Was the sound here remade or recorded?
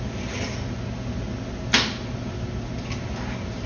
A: recorded